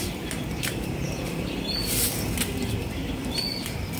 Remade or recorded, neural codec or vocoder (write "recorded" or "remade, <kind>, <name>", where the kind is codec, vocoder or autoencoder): remade, vocoder, BigVGAN v2